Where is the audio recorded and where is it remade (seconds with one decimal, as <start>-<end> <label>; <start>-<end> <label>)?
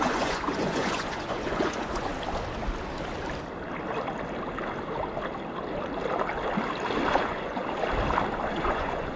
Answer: 0.0-2.1 remade; 2.1-7.1 recorded; 7.1-7.6 remade; 7.6-8.5 recorded; 8.5-9.2 remade